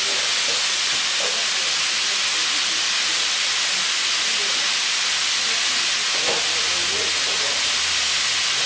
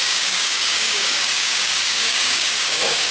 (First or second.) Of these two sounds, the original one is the first